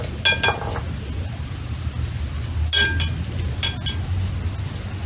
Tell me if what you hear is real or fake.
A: real